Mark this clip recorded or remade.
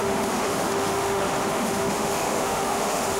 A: remade